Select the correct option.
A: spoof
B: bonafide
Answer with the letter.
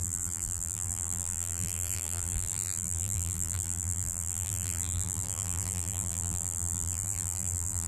A